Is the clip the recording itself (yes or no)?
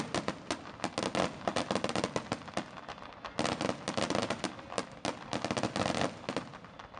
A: yes